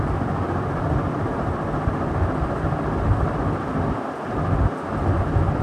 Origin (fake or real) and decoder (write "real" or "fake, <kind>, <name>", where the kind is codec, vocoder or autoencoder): real